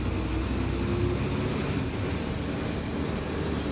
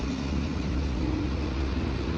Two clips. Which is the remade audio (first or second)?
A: second